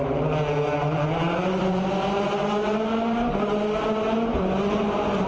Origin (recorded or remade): recorded